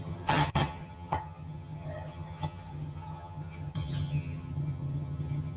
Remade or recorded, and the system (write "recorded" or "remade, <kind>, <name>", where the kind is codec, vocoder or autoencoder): remade, vocoder, HiFi-GAN